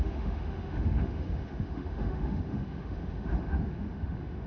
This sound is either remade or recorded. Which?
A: remade